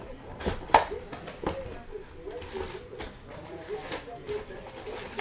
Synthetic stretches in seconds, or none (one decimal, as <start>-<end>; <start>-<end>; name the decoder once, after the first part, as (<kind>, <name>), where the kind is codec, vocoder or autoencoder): 0.0-0.4 (vocoder, BigVGAN v2); 3.5-5.2